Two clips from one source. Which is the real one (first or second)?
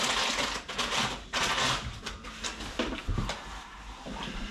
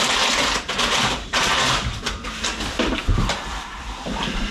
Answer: first